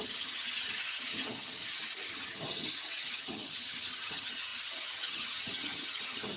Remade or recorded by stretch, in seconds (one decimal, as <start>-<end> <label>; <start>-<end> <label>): 0.0-1.6 remade; 1.6-2.1 recorded; 2.1-6.4 remade

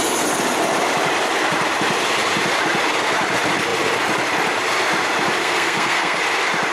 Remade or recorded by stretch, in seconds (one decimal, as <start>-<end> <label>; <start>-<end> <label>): 0.0-5.4 recorded; 5.4-6.2 remade; 6.2-6.7 recorded

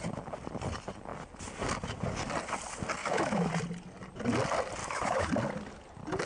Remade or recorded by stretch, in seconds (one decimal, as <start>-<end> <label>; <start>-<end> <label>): 0.0-3.0 recorded; 3.0-3.5 remade; 3.5-4.8 recorded; 4.8-5.3 remade; 5.3-6.3 recorded

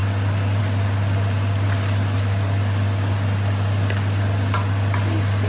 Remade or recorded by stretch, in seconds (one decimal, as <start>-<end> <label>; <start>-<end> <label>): 0.0-5.5 recorded

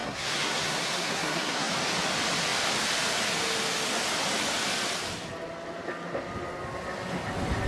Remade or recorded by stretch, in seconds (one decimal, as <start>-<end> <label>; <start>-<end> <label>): 0.0-1.7 remade; 1.7-7.7 recorded